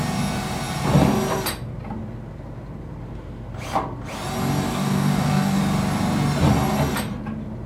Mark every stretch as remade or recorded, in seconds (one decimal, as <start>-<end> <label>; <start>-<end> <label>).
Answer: 0.0-4.7 recorded; 4.7-5.6 remade; 5.6-7.7 recorded